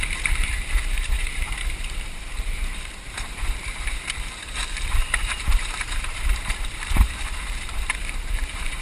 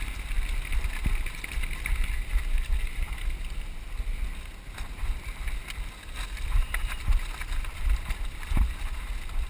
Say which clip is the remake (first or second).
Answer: first